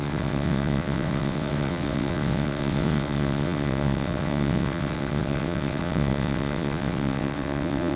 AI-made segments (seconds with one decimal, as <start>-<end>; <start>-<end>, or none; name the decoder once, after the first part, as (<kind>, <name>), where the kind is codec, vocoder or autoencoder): 0.0-8.0 (vocoder, WaveNeXt)

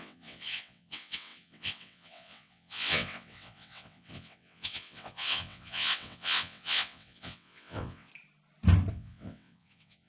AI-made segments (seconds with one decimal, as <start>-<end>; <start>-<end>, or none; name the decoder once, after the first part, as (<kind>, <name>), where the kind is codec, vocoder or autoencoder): 0.0-8.1 (vocoder, WaveNeXt); 8.9-10.1